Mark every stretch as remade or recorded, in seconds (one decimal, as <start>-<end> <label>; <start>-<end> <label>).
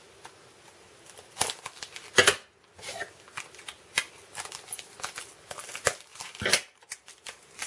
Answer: 0.0-6.1 recorded; 6.1-7.7 remade